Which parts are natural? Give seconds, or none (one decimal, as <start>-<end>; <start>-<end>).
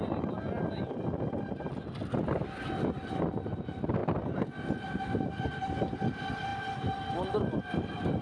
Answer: 0.0-8.2